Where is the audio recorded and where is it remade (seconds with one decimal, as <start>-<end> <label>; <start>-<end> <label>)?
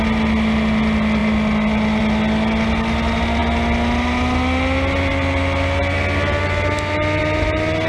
0.0-7.9 recorded